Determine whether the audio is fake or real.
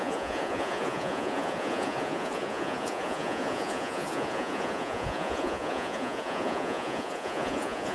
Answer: fake